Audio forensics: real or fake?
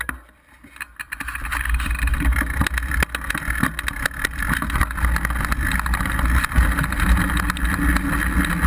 real